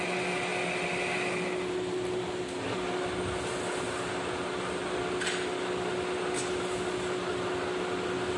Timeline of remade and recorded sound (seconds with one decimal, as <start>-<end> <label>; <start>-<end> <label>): 0.0-8.4 recorded